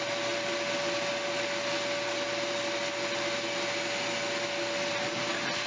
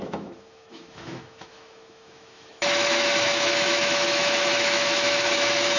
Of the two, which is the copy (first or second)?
second